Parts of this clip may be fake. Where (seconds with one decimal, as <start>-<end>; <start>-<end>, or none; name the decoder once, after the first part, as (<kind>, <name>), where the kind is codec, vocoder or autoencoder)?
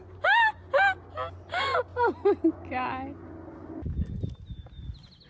none